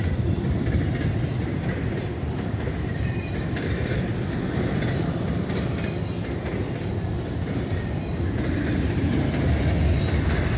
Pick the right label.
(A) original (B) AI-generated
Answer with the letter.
B